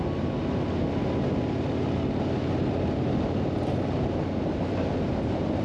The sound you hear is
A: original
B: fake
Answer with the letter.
A